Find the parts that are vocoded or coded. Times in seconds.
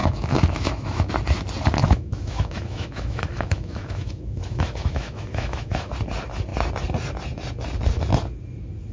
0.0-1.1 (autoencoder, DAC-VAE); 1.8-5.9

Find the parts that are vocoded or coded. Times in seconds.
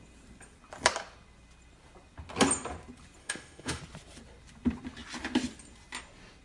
3.2-3.8 (autoencoder, DAC-VAE)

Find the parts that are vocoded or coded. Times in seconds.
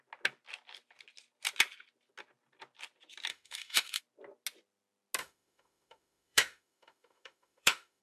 3.3-4.0 (autoencoder, DAC-VAE); 5.2-8.0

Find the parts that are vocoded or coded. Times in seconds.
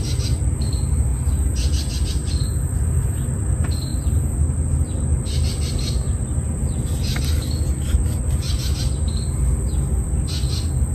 none